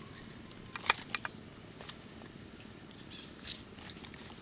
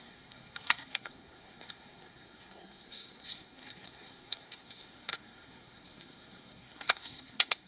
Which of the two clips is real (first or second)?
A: first